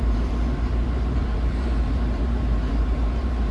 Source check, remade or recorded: remade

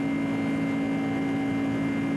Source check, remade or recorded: recorded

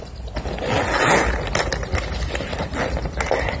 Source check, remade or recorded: recorded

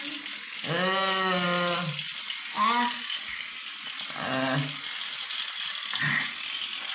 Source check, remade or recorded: recorded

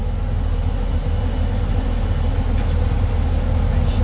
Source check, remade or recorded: recorded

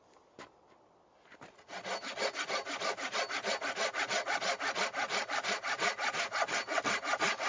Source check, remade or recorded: recorded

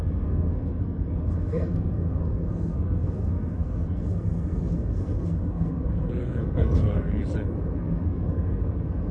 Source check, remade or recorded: remade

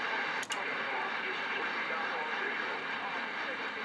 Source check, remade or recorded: recorded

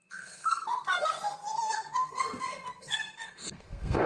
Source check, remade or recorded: remade